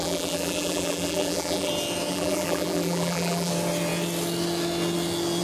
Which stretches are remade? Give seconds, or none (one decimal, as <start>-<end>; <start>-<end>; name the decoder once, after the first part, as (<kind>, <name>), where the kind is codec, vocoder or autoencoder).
0.0-1.7 (vocoder, BigVGAN v2); 2.1-3.5